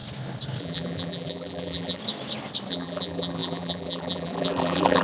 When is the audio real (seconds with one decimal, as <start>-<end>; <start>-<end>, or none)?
0.0-0.6; 2.0-2.7